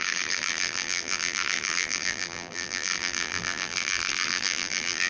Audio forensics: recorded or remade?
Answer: remade